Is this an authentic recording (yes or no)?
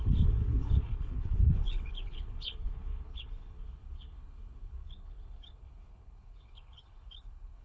no